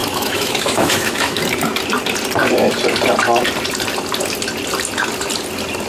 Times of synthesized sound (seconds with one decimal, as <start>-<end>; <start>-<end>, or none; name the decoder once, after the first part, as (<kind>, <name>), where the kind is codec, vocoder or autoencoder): 0.0-1.4 (autoencoder, DAC-VAE)